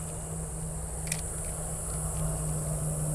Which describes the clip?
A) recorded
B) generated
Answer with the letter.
A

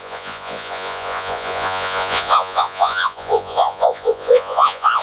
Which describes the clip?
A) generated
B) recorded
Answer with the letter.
A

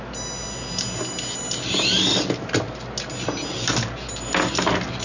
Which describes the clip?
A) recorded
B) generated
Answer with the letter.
A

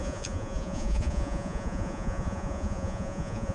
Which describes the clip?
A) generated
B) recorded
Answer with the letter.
A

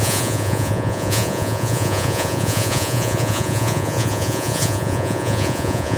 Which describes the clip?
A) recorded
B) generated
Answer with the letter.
B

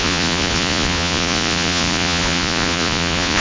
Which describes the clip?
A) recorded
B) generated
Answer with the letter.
B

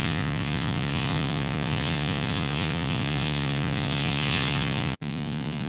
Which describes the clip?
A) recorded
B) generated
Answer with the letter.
B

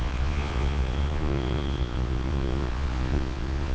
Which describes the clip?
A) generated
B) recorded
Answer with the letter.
A